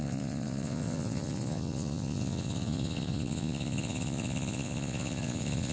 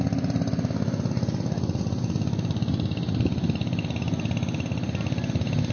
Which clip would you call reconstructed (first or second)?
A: first